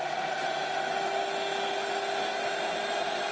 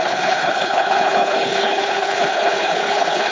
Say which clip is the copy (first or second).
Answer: second